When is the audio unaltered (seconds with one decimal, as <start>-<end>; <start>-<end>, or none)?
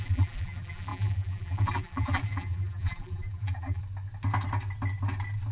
3.8-5.5